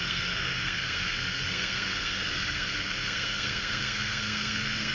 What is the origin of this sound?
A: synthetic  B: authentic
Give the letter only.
A